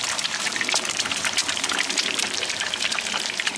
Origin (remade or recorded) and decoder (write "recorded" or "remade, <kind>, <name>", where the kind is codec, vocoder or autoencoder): remade, vocoder, BigVGAN v2